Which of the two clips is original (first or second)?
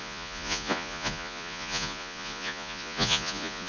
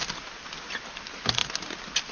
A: second